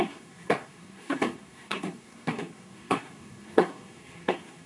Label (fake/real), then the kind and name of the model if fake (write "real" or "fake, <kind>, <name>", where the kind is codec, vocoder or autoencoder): fake, codec, SNAC